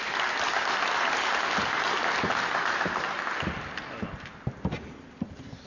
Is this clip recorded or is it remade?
remade